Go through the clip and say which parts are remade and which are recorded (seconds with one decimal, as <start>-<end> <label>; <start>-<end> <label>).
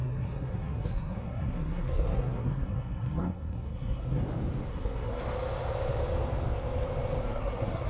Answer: 0.0-4.2 remade; 4.2-4.7 recorded; 4.7-5.2 remade; 5.2-7.2 recorded; 7.2-7.9 remade